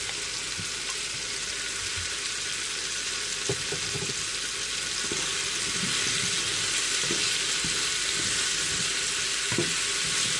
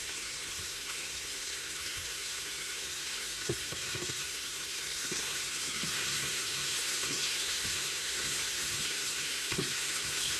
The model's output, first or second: second